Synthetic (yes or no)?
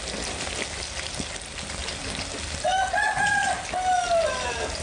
no